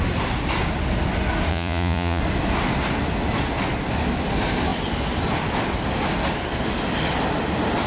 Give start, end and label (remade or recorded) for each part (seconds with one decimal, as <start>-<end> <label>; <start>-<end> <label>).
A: 0.0-1.5 recorded; 1.5-2.2 remade; 2.2-7.9 recorded